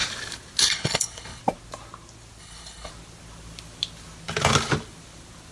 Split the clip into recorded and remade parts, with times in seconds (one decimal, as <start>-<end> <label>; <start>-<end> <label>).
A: 0.0-0.6 recorded; 0.6-1.4 remade; 1.4-2.4 recorded; 2.4-2.9 remade; 2.9-5.5 recorded